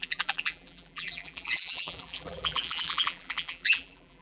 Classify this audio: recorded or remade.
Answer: remade